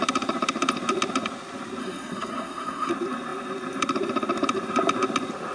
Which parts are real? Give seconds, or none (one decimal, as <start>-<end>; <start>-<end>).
0.0-1.8; 2.9-5.5